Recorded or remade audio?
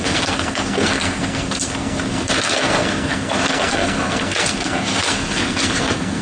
remade